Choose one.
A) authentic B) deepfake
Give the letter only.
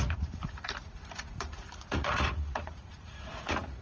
B